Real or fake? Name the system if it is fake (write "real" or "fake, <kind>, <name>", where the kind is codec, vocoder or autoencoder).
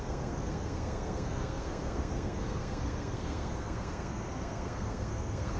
fake, codec, SNAC